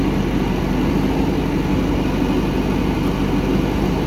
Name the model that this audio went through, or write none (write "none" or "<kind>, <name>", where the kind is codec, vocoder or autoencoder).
none